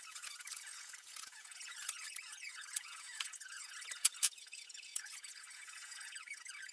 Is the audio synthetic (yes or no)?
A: yes